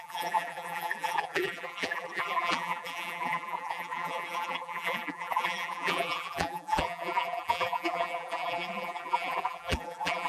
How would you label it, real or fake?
fake